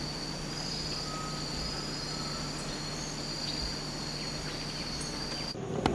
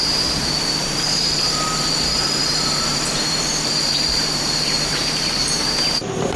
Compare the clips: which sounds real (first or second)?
first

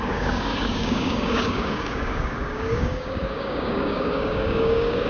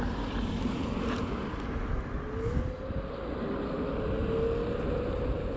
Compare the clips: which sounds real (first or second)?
second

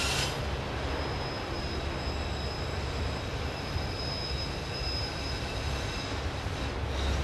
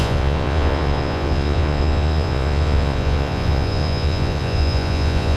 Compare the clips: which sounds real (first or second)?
first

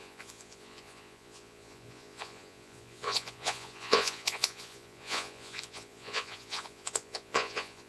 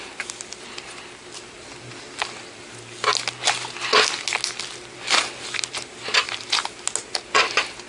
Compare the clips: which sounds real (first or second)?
second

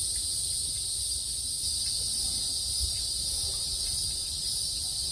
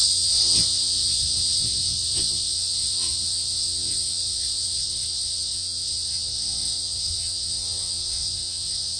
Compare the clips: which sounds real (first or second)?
first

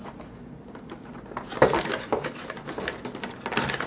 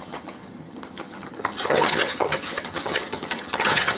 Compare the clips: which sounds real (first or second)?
first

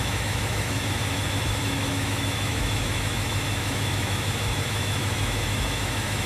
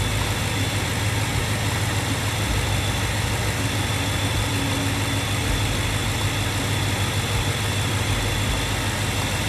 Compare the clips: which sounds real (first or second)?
second